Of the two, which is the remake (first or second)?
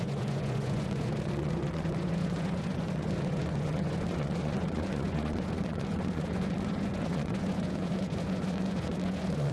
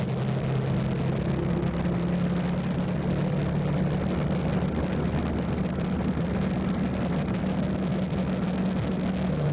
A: first